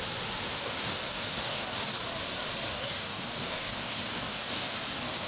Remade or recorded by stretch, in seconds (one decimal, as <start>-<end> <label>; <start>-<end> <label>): 0.0-0.5 recorded; 0.5-2.0 remade; 2.0-2.7 recorded; 2.7-5.3 remade